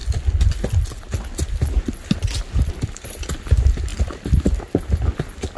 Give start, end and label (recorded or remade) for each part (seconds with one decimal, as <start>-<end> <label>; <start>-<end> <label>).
0.0-5.6 recorded